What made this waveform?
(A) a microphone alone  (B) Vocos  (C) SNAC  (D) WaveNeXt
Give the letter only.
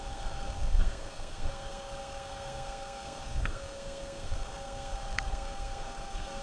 C